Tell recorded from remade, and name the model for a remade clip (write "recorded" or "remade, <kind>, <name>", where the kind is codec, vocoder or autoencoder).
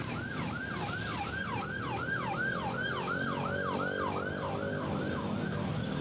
recorded